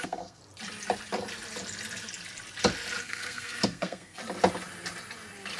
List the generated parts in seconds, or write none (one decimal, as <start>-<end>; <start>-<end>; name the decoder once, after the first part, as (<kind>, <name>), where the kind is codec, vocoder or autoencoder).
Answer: 0.0-0.4 (codec, SNAC); 3.0-4.2